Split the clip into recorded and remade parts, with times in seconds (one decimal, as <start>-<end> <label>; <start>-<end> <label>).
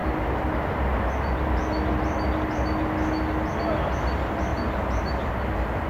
0.0-4.5 recorded; 4.5-5.3 remade; 5.3-5.9 recorded